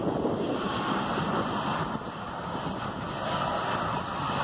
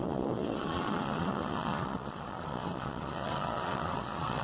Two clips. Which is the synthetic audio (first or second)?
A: second